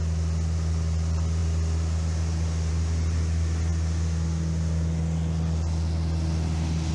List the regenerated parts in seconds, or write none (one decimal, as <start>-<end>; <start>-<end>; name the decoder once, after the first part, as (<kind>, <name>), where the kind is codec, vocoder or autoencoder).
none